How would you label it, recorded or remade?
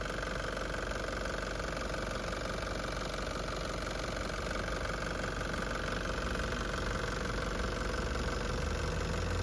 recorded